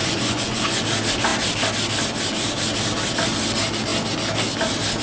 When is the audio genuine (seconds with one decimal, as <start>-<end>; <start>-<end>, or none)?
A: 0.8-5.0